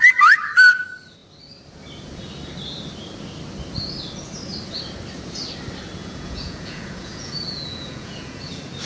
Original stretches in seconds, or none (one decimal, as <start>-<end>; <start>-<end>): 0.0-6.0; 8.5-8.9